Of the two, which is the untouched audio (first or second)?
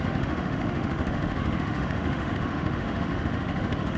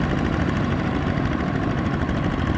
second